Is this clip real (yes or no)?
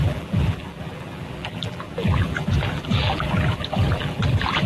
no